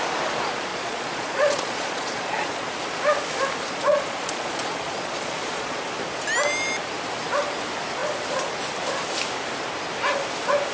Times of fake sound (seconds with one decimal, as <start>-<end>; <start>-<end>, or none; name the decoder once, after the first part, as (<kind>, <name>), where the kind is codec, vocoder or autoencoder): 0.7-2.7 (vocoder, Vocos); 3.9-5.8